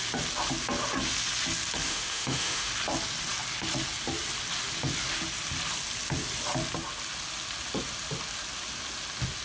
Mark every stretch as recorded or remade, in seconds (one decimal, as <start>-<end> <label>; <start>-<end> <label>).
0.0-1.9 recorded; 1.9-2.7 remade; 2.7-9.4 recorded